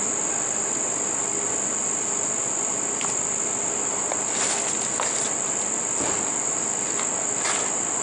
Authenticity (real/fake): real